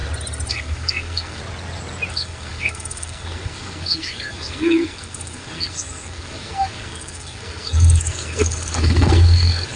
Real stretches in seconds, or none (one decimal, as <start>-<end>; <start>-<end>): 0.0-0.5; 1.4-2.1